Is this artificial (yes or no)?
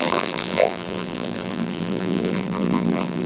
yes